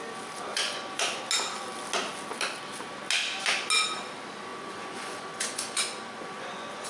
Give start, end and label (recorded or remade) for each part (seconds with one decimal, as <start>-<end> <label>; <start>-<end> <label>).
0.0-0.5 recorded; 0.5-1.2 remade; 1.2-4.5 recorded; 4.5-6.9 remade